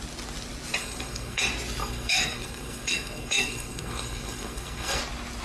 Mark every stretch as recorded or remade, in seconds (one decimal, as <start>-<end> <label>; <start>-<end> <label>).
0.0-0.8 recorded; 0.8-1.4 remade; 1.4-1.8 recorded; 1.8-5.0 remade; 5.0-5.4 recorded